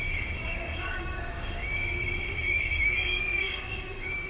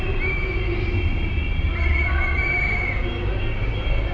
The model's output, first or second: first